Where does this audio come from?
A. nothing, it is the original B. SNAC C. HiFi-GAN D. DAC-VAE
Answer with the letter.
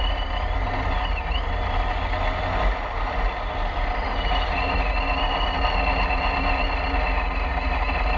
A